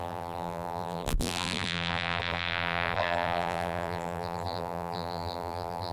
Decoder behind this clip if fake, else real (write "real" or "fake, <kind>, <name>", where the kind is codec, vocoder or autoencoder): fake, vocoder, BigVGAN v2